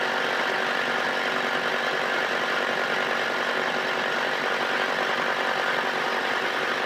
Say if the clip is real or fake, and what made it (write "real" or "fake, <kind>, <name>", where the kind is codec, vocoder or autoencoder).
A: real